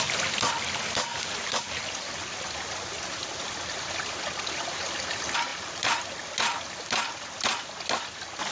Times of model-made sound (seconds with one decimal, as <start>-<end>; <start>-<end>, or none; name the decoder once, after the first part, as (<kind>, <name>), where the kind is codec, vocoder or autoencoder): 1.1-1.8 (vocoder, BigVGAN v2)